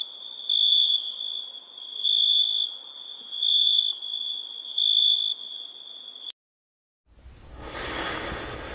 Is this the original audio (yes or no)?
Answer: yes